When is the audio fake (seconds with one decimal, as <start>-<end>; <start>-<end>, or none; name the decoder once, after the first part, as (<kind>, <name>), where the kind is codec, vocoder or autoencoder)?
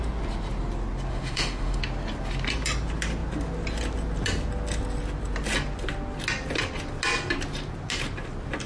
1.1-1.8 (autoencoder, DAC-VAE)